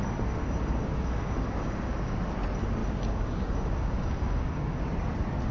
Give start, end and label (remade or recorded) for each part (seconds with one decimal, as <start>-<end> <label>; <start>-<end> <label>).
0.0-0.4 recorded; 0.4-2.2 remade; 2.2-2.8 recorded; 2.8-4.9 remade; 4.9-5.5 recorded